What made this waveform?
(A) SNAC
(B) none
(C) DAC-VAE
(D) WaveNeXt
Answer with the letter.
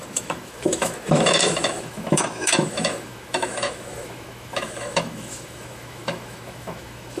C